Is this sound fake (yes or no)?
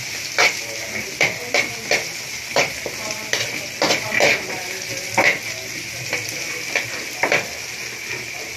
no